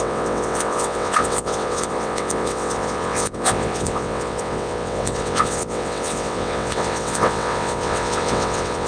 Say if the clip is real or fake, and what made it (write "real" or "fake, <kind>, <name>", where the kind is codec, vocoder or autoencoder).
fake, vocoder, WaveNeXt